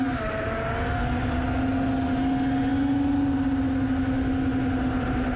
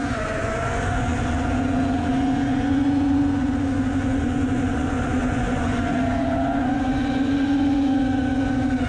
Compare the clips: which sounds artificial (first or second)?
second